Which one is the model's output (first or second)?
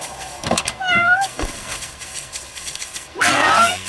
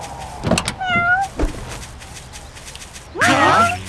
first